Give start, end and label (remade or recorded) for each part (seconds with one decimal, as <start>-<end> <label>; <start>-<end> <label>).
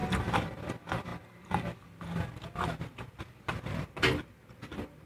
0.0-0.7 remade; 0.7-5.1 recorded